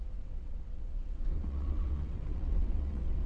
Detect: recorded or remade remade